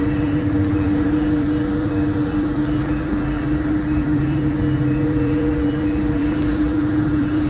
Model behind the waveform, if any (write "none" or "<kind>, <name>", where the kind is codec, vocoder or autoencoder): vocoder, BigVGAN v2